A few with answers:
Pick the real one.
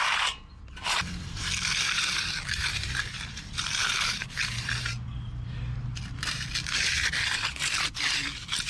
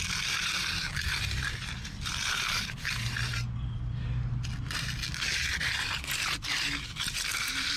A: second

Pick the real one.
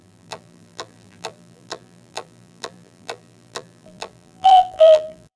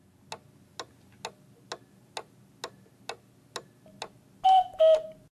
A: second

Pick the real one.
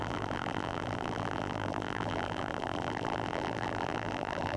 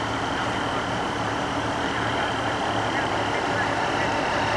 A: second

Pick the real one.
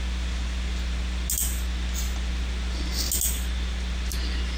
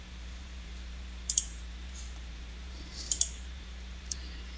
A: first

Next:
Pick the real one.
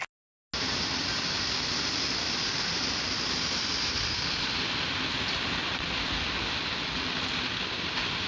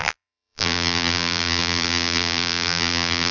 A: first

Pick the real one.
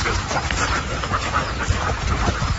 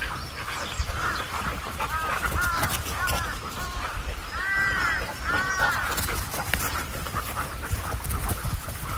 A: first